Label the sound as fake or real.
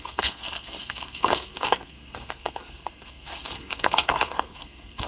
fake